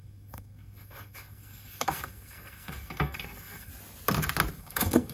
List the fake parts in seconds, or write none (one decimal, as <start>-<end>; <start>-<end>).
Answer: 0.0-3.7; 4.5-5.1